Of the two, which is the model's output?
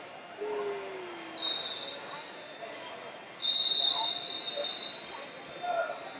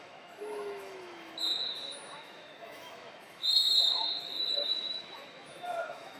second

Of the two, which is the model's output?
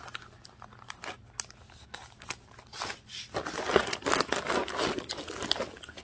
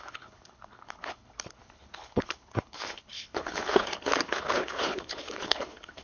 second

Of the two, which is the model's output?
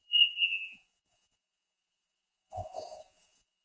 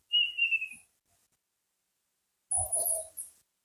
first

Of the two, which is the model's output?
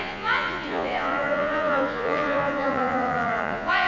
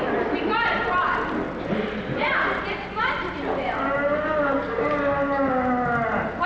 first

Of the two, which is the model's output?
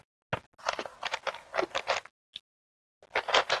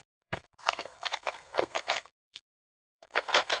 second